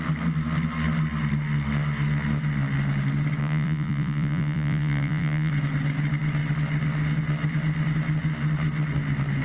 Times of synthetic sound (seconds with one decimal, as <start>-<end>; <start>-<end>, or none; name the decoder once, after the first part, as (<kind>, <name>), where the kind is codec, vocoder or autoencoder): 3.4-5.5 (vocoder, Vocos)